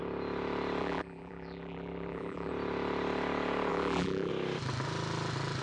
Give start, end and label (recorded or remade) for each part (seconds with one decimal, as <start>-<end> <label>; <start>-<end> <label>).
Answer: 0.0-0.8 recorded; 0.8-2.5 remade; 2.5-3.7 recorded; 3.7-4.3 remade; 4.3-5.6 recorded